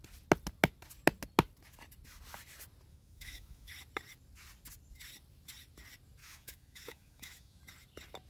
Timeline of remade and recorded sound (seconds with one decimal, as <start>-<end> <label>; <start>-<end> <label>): 0.0-2.9 recorded; 2.9-3.7 remade; 3.7-6.2 recorded; 6.2-7.6 remade; 7.6-8.3 recorded